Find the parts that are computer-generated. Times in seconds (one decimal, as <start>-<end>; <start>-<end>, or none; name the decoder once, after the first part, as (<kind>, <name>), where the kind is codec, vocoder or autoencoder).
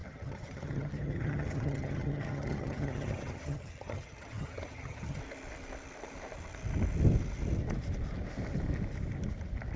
0.0-5.2 (vocoder, HiFi-GAN)